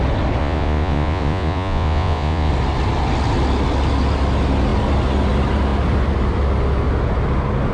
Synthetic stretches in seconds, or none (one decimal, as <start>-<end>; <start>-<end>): 0.4-2.5